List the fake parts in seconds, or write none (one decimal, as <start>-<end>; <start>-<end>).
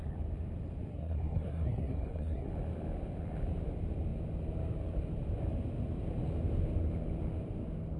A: 0.9-2.5